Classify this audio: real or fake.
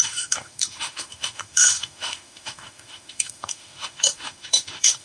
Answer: fake